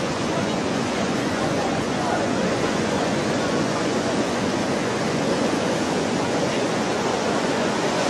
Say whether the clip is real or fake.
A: fake